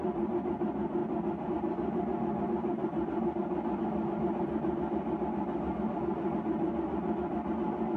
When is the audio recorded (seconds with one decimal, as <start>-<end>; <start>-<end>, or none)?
0.0-8.0